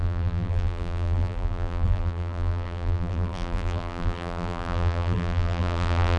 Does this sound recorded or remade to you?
remade